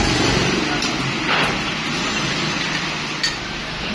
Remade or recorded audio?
recorded